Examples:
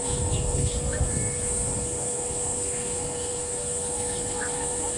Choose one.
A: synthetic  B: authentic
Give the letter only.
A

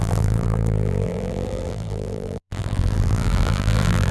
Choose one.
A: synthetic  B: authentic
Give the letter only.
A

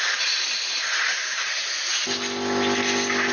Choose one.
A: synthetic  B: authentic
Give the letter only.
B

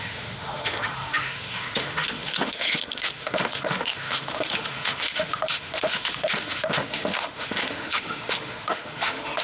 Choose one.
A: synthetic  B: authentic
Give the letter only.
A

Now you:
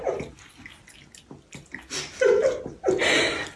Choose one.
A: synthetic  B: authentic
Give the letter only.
B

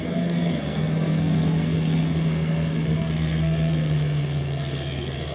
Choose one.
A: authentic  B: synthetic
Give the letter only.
B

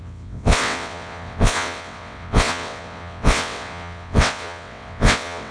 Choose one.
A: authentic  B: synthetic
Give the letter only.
B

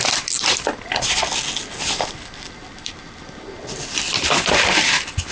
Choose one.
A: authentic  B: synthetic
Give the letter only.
A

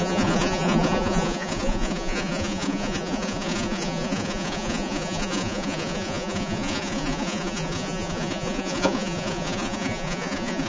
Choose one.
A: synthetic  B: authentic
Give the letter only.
A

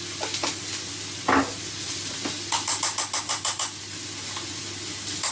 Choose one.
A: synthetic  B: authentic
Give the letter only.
B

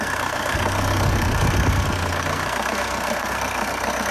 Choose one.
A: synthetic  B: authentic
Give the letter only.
A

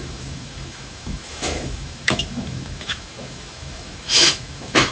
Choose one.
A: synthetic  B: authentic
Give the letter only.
A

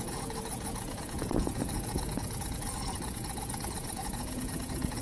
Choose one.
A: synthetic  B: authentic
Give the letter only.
A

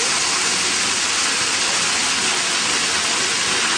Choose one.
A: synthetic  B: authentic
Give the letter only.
B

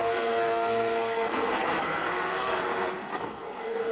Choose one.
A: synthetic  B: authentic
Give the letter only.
A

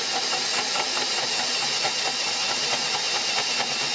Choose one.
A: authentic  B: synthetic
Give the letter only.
A